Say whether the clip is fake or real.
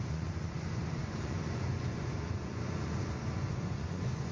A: fake